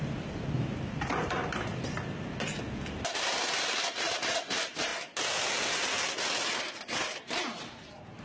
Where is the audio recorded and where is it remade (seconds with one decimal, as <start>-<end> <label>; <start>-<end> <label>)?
0.0-1.4 remade; 1.4-3.9 recorded; 3.9-4.9 remade; 4.9-6.6 recorded; 6.6-8.2 remade